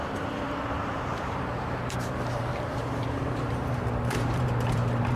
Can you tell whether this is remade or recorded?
remade